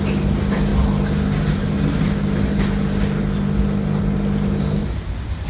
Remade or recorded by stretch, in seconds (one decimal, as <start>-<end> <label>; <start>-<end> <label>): 0.0-4.8 recorded; 4.8-5.5 remade